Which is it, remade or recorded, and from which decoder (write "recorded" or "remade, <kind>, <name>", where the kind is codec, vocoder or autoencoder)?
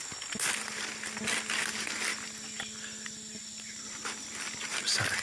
recorded